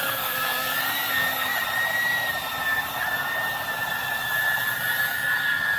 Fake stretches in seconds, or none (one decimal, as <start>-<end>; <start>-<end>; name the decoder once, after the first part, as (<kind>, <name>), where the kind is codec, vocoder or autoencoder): 0.0-1.5 (codec, DAC); 5.0-5.8